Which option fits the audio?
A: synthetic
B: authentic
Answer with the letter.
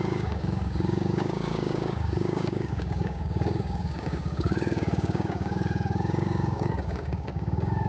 A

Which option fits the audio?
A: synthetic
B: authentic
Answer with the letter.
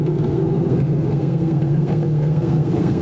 A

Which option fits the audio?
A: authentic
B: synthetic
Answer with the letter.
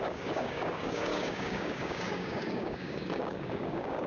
B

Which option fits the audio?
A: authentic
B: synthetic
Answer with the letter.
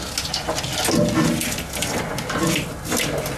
A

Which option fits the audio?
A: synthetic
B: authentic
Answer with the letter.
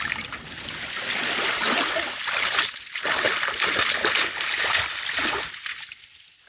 B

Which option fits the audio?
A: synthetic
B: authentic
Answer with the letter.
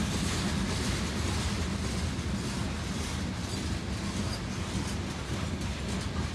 B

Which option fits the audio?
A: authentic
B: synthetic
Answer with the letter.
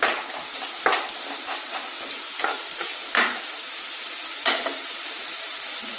A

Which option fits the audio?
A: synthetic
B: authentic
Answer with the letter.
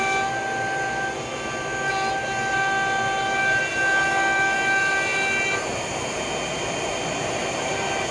B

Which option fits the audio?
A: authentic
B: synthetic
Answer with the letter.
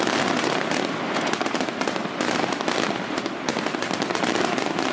A